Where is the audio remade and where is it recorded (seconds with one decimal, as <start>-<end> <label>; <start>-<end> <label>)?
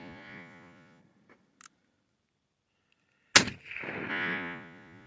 0.0-1.0 remade; 1.0-4.1 recorded; 4.1-5.1 remade